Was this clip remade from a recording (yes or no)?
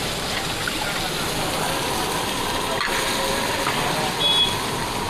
no